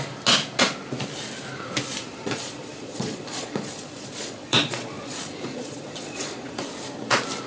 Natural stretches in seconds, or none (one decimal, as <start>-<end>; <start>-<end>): 0.0-2.1; 6.6-7.5